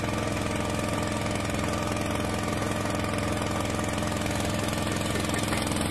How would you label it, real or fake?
real